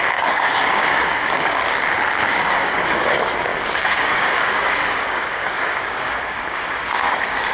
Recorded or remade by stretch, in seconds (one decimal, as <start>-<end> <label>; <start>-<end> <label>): 0.0-1.6 remade; 1.6-2.3 recorded; 2.3-7.5 remade